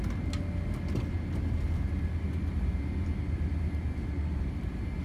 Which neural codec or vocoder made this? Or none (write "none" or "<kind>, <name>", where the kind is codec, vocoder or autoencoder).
none